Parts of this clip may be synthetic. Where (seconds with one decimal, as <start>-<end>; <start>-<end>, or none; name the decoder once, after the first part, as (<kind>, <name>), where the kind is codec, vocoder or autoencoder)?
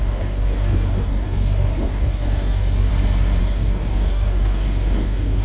0.0-2.9 (codec, DAC); 3.4-5.4